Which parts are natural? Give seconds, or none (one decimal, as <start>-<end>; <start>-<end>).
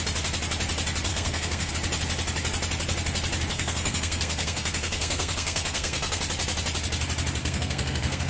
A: 0.0-1.1; 1.7-3.5; 6.2-7.4